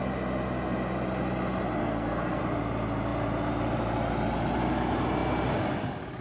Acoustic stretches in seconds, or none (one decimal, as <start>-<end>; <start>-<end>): 0.0-1.8; 2.4-6.2